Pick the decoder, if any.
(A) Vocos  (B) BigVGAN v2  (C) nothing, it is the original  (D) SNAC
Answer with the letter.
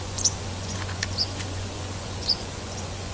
A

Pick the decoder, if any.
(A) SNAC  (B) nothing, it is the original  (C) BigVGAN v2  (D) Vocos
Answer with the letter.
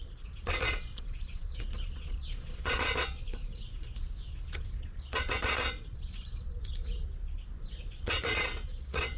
D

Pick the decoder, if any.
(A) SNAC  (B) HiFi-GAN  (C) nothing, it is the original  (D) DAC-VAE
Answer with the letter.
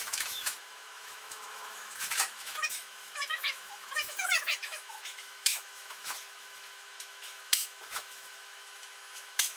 D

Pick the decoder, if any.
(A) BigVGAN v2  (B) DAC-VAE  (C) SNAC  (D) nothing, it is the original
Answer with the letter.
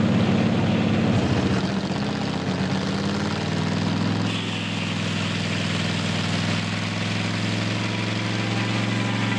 D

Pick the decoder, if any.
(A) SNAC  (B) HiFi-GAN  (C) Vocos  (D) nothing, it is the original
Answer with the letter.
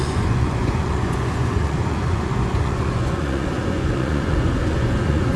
C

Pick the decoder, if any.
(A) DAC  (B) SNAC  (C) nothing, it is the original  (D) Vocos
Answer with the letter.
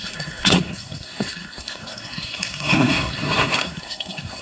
B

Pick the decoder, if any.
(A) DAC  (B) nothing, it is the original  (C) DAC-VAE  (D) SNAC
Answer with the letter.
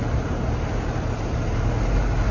B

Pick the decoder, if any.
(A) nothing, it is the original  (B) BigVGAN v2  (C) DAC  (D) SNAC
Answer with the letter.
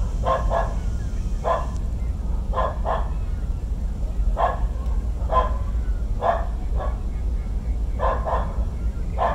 A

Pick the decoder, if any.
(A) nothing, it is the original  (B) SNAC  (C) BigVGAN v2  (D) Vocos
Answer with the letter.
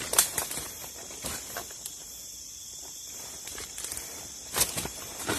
C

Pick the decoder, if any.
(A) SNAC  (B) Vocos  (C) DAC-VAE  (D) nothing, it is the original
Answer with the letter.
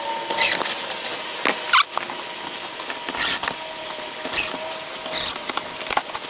D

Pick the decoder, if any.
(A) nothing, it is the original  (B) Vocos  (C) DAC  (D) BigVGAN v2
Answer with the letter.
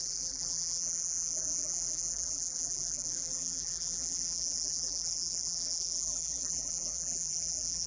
D